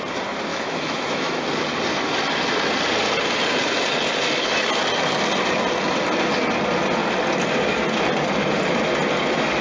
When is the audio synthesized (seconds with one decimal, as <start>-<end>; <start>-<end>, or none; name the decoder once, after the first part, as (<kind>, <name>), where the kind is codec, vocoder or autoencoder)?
0.5-1.4 (autoencoder, DAC-VAE)